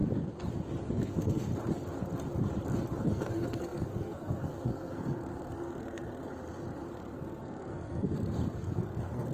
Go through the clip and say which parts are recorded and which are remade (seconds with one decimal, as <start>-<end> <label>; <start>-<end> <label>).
0.0-0.9 recorded; 0.9-1.5 remade; 1.5-3.0 recorded; 3.0-6.3 remade; 6.3-6.9 recorded; 6.9-9.3 remade

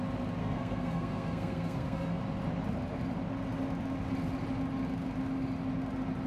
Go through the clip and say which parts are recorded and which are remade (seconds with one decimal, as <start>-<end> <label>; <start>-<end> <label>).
0.0-0.4 recorded; 0.4-2.2 remade; 2.2-6.3 recorded

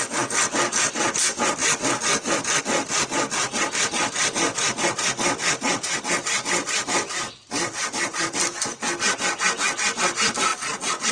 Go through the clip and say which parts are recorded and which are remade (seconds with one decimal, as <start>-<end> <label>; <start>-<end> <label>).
0.0-10.5 recorded; 10.5-11.1 remade

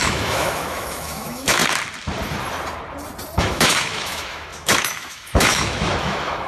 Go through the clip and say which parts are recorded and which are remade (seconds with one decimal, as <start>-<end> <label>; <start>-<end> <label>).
0.0-1.6 remade; 1.6-3.4 recorded; 3.4-6.5 remade

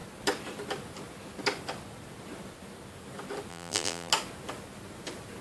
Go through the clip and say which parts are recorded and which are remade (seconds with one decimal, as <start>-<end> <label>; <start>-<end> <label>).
0.0-3.5 recorded; 3.5-4.1 remade; 4.1-5.4 recorded

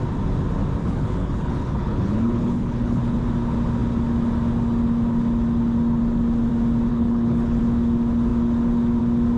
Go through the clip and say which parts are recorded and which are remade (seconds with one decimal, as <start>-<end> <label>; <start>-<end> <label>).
0.0-0.8 recorded; 0.8-3.2 remade; 3.2-6.9 recorded; 6.9-7.6 remade; 7.6-9.4 recorded

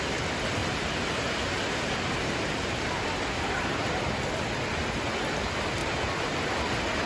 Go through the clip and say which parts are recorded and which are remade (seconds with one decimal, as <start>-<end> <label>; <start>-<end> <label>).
0.0-0.6 recorded; 0.6-3.9 remade; 3.9-5.8 recorded; 5.8-6.6 remade; 6.6-7.1 recorded

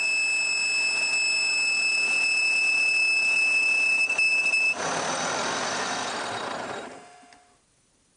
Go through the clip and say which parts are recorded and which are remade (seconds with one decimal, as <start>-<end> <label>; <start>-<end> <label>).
0.0-8.2 recorded